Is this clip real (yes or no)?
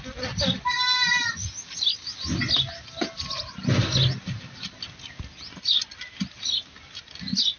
yes